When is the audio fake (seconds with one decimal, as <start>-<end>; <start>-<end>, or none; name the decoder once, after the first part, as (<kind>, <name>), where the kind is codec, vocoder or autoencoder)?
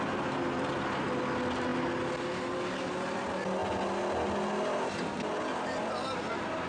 none